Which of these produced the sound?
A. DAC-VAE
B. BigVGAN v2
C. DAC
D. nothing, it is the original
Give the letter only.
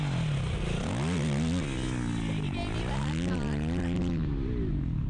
D